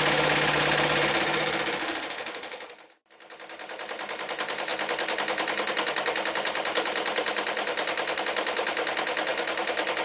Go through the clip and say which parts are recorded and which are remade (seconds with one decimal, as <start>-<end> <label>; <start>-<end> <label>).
0.0-1.8 recorded; 1.8-2.7 remade; 2.7-10.0 recorded